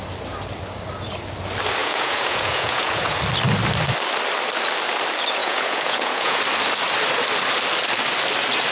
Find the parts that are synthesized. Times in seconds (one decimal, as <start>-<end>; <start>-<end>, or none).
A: 1.8-3.2; 5.4-6.4